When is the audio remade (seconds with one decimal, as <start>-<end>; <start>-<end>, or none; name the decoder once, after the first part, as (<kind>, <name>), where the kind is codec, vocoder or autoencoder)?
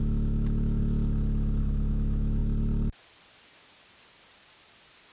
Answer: 0.0-0.8 (autoencoder, DAC-VAE); 1.6-2.4